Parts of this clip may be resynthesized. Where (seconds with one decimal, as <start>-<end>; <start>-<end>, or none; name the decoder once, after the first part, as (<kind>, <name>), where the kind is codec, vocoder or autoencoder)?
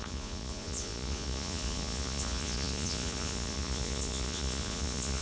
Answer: 0.0-5.2 (vocoder, Vocos)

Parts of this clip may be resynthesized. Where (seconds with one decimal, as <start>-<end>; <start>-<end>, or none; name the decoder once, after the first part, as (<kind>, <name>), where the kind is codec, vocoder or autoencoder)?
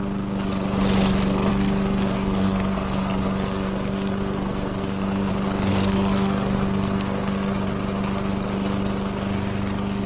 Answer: 1.5-5.3 (codec, SNAC); 5.7-7.5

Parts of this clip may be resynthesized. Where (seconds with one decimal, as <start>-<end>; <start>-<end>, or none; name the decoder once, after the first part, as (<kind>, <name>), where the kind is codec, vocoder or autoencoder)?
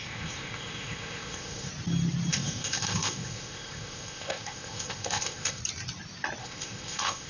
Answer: 0.0-1.7 (codec, ZipCodec); 2.3-5.6; 6.4-7.3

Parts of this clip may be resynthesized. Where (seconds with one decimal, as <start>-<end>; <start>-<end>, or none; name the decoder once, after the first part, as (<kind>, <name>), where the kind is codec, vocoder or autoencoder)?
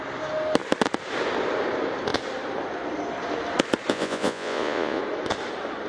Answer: 3.9-5.0 (vocoder, Vocos)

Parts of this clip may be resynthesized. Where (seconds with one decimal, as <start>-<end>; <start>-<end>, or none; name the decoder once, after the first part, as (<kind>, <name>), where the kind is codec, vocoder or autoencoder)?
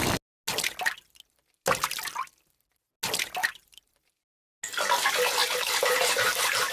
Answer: 3.4-4.1 (vocoder, BigVGAN v2); 5.4-6.7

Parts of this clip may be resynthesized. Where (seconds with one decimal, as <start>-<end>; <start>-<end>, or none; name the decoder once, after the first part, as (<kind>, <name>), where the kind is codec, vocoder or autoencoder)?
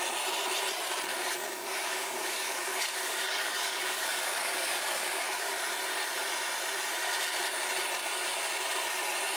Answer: 1.1-5.5 (codec, DAC)